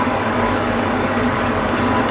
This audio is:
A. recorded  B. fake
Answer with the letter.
B